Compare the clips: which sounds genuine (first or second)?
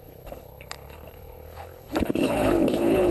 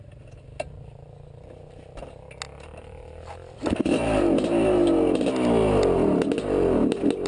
second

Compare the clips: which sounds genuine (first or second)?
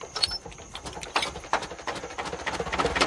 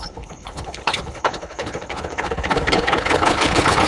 first